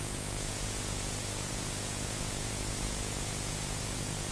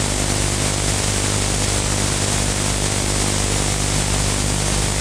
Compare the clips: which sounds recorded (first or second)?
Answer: second